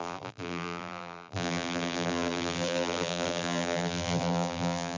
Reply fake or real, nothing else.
fake